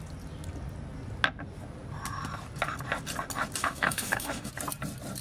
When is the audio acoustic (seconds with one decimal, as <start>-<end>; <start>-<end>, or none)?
0.0-3.6; 4.5-5.2